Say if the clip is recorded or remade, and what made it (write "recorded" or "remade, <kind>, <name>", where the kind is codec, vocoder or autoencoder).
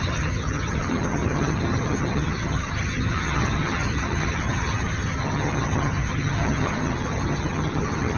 remade, vocoder, HiFi-GAN